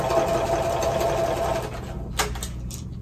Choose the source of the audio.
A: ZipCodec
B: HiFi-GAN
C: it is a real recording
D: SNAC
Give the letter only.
C